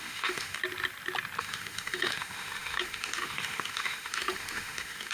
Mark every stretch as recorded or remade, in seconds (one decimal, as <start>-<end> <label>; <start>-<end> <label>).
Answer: 0.0-0.6 remade; 0.6-1.4 recorded; 1.4-5.1 remade